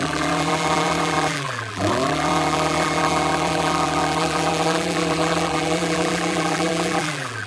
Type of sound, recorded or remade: remade